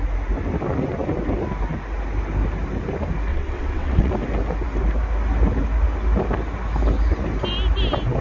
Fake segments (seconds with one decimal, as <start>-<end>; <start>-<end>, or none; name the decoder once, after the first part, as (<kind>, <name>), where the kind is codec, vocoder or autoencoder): 3.3-4.1 (vocoder, WaveNeXt)